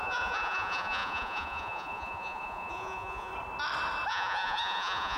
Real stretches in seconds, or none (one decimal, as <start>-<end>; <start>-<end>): 3.3-4.1